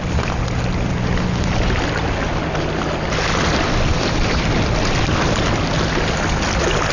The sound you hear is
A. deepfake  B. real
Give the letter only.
B